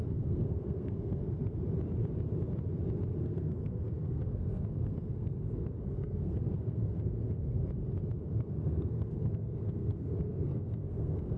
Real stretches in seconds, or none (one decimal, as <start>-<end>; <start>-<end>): 1.6-3.2; 7.7-8.3